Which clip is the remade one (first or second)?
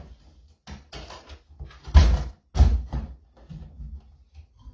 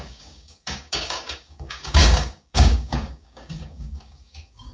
second